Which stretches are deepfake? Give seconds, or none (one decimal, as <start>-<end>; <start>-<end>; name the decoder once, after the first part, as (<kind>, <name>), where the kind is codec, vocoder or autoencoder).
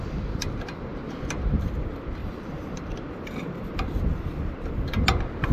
2.2-4.9 (vocoder, BigVGAN v2)